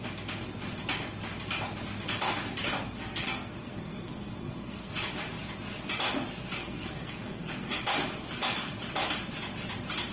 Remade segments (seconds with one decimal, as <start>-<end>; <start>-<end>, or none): 2.8-4.9; 6.6-7.8